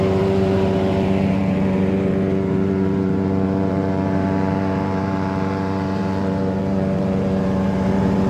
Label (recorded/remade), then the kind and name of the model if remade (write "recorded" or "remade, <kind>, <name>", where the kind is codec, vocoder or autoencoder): remade, vocoder, BigVGAN v2